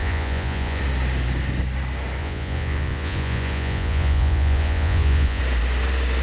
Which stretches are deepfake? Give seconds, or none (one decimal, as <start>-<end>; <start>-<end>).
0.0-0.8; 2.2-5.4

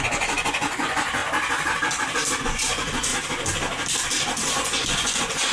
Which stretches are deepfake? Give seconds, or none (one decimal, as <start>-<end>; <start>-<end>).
0.0-1.2; 2.4-3.1; 4.5-5.5

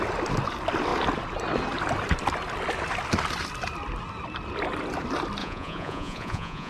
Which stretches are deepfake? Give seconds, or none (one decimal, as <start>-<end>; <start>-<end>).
5.4-6.7